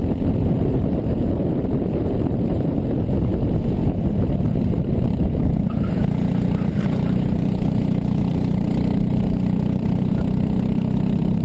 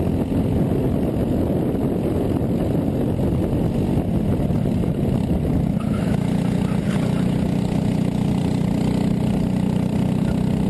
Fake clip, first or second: first